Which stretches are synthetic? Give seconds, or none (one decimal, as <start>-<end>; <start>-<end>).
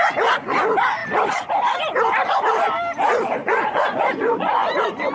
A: 3.4-5.1